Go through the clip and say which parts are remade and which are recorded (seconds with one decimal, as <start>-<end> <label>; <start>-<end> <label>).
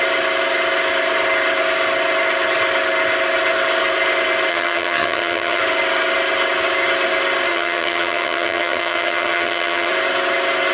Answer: 0.0-4.5 recorded; 4.5-5.6 remade; 5.6-7.5 recorded; 7.5-9.9 remade; 9.9-10.7 recorded